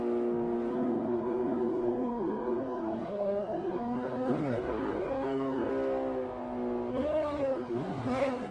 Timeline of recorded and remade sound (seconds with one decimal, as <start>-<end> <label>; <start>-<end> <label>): 0.0-0.7 recorded; 0.7-5.7 remade; 5.7-6.9 recorded; 6.9-8.5 remade